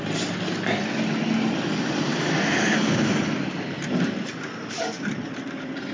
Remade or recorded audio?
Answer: recorded